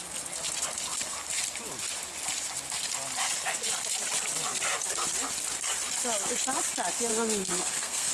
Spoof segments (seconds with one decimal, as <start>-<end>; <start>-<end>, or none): 7.1-8.1